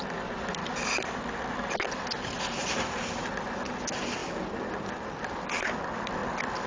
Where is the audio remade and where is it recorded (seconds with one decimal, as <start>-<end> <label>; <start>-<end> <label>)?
0.0-6.7 recorded